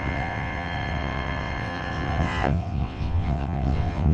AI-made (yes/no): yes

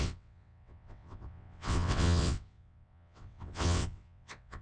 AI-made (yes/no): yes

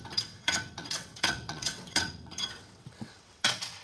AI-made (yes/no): yes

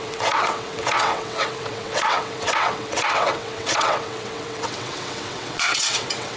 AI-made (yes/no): yes